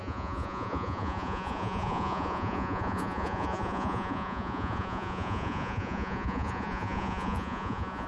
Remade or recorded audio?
remade